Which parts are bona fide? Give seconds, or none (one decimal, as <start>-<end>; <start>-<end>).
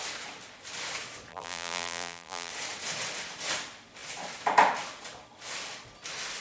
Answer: 0.0-1.3; 2.5-6.4